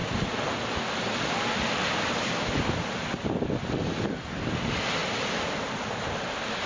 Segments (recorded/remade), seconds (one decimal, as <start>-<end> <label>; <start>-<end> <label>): 0.0-4.0 remade; 4.0-5.0 recorded; 5.0-5.5 remade; 5.5-6.7 recorded